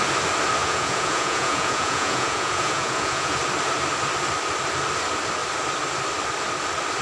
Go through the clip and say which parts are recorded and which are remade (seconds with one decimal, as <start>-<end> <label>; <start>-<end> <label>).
0.0-0.6 recorded; 0.6-3.4 remade; 3.4-7.0 recorded

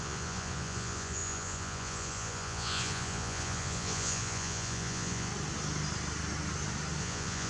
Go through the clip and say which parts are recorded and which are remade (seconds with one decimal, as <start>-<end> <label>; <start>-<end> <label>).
0.0-5.3 remade; 5.3-7.0 recorded; 7.0-7.5 remade

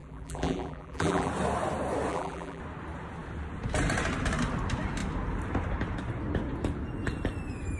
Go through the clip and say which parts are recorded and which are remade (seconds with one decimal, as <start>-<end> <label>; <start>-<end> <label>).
0.0-1.3 remade; 1.3-2.1 recorded; 2.1-2.6 remade; 2.6-7.8 recorded

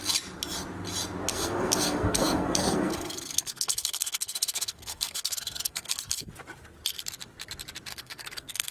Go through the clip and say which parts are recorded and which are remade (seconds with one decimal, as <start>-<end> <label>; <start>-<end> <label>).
0.0-1.3 recorded; 1.3-6.3 remade; 6.3-7.9 recorded; 7.9-8.7 remade

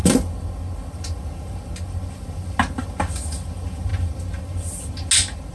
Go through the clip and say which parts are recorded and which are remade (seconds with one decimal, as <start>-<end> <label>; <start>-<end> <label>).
0.0-5.5 recorded

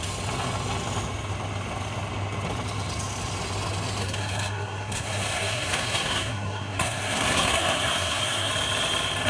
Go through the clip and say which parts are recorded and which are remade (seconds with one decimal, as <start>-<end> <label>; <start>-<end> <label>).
0.0-4.0 recorded; 4.0-8.5 remade; 8.5-9.3 recorded

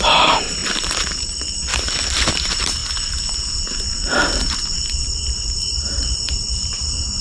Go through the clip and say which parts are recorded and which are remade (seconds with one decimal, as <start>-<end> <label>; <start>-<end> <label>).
0.0-1.7 remade; 1.7-2.3 recorded; 2.3-2.8 remade; 2.8-4.0 recorded; 4.0-7.2 remade